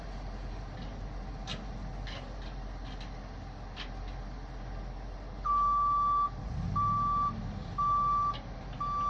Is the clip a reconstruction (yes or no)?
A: no